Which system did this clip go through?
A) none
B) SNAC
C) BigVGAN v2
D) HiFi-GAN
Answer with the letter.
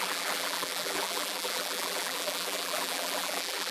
C